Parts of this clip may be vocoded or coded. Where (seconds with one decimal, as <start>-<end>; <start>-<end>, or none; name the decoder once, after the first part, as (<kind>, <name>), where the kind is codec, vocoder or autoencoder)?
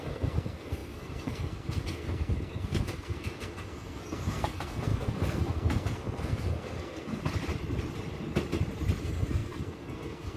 0.0-7.2 (codec, SNAC); 9.0-10.4